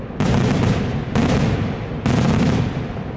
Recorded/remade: recorded